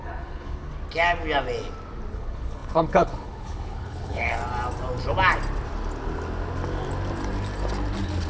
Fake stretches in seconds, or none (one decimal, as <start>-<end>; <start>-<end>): 0.0-0.7; 2.1-4.4